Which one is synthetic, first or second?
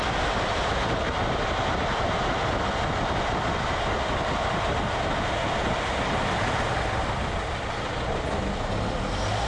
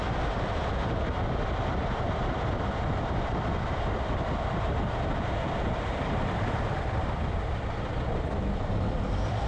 second